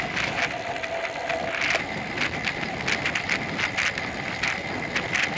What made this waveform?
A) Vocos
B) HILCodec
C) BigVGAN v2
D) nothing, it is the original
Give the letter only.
D